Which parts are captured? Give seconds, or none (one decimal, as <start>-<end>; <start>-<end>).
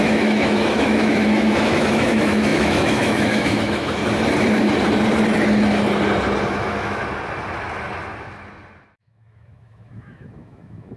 4.0-6.4; 7.0-9.0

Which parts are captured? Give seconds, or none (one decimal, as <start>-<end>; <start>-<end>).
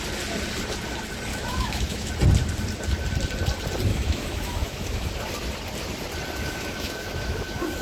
0.0-1.3; 2.1-3.9; 5.1-6.4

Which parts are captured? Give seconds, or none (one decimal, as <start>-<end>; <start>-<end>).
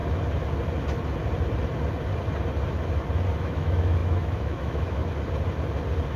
0.0-3.4; 5.0-6.2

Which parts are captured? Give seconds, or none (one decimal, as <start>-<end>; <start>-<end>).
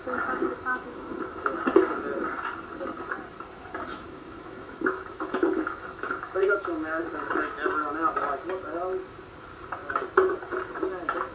0.0-0.7; 1.6-3.9; 7.0-11.3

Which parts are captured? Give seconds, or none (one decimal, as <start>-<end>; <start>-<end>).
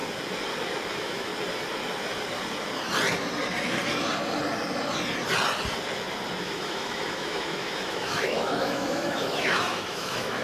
0.0-0.9; 1.3-6.4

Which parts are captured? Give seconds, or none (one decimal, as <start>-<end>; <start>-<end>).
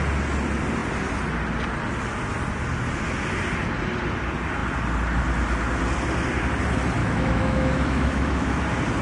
0.0-7.0; 8.6-9.0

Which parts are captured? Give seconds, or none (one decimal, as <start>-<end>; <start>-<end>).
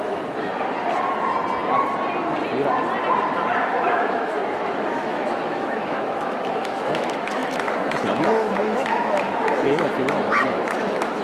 0.5-3.6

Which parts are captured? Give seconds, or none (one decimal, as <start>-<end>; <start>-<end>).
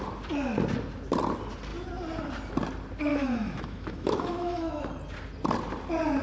0.0-3.1; 4.8-6.2